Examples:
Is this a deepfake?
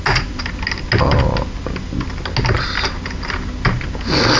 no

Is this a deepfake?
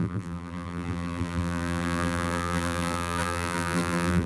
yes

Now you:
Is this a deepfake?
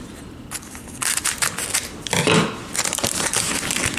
no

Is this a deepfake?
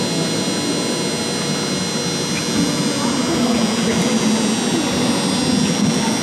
no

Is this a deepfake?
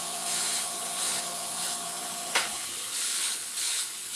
yes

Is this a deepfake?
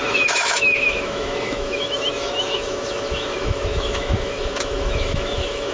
yes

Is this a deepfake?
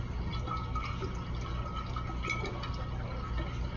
no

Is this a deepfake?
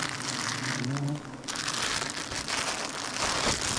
no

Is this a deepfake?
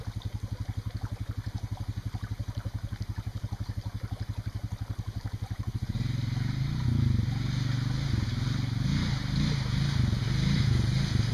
no